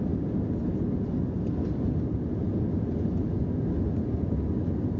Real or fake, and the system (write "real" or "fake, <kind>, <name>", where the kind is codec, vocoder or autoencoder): real